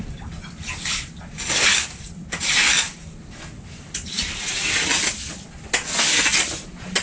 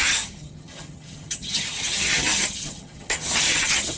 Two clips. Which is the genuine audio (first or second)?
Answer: first